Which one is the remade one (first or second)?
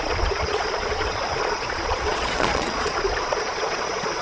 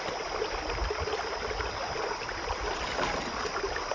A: first